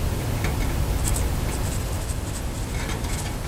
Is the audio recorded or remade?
recorded